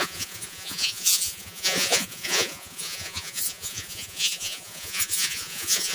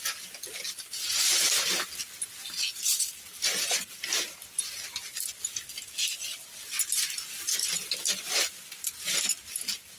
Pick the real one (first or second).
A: second